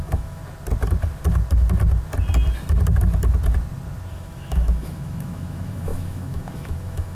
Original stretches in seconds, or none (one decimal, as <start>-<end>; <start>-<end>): 0.4-4.1